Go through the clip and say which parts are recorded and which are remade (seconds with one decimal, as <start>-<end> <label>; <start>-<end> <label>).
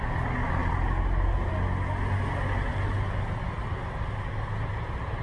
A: 0.0-5.2 recorded